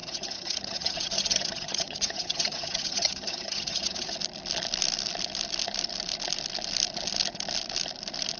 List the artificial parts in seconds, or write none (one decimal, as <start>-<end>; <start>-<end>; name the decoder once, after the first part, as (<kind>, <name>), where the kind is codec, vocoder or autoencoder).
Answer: 0.0-4.2 (vocoder, HiFi-GAN)